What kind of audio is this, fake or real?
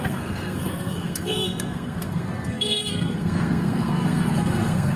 fake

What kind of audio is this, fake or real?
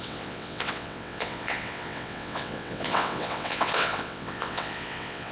fake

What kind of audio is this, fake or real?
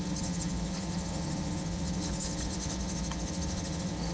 fake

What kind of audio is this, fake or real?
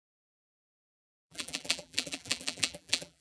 fake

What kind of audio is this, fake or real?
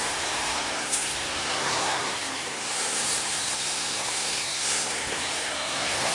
fake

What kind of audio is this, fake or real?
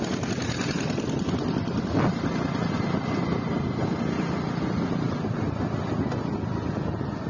real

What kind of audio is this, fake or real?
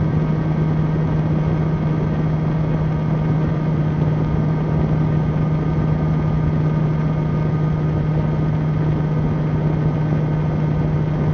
real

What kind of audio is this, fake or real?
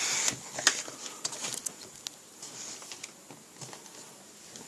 real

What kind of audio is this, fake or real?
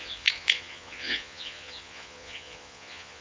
fake